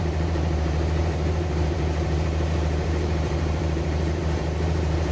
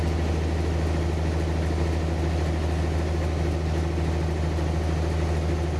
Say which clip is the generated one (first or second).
first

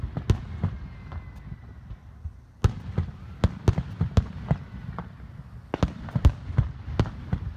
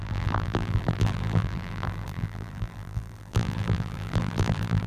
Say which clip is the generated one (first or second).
second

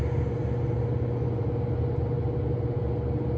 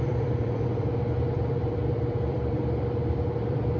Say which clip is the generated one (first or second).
second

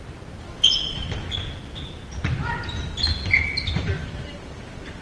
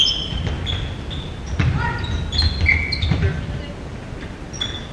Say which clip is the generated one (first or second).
first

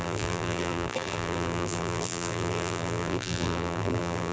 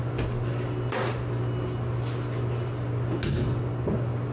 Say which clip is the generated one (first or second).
first